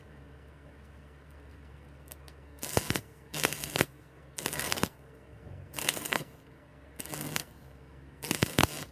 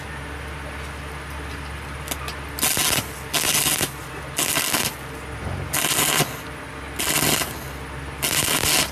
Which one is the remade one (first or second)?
first